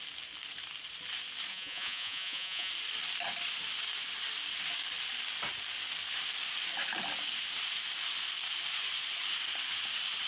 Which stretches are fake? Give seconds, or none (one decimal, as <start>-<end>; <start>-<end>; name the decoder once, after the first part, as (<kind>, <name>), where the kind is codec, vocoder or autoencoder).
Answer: 1.5-2.7 (vocoder, Vocos)